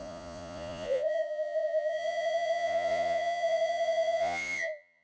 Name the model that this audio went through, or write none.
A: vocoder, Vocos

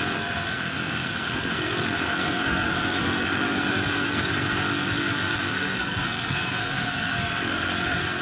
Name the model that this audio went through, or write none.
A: codec, SNAC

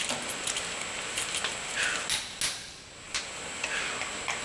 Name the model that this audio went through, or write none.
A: none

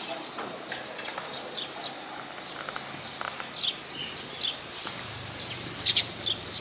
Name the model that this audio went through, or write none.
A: none